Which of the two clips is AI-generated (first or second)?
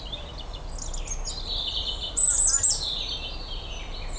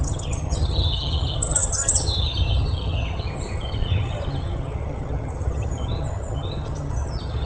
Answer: second